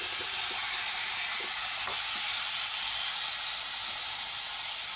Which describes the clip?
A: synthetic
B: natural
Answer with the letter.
B